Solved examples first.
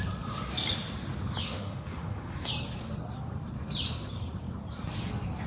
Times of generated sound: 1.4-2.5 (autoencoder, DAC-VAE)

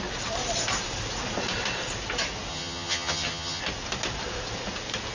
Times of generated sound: 2.5-3.6 (vocoder, HiFi-GAN)

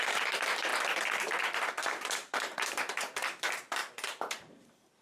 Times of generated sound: 0.0-0.7 (vocoder, BigVGAN v2); 1.7-5.0

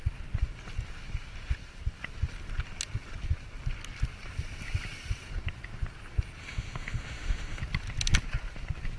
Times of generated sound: 6.4-7.6 (autoencoder, DAC-VAE)

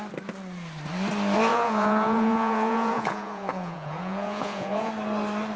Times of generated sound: 1.5-4.9 (vocoder, Vocos)